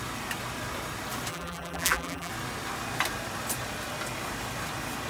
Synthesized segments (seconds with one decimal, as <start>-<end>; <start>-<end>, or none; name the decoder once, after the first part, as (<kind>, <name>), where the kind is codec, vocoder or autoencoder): 1.3-2.3 (vocoder, BigVGAN v2)